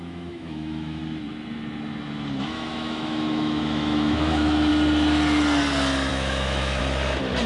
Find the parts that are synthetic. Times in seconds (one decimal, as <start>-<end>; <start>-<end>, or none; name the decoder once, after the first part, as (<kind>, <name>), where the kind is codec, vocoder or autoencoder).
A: 0.0-1.0 (autoencoder, DAC-VAE); 2.4-4.7; 6.1-6.8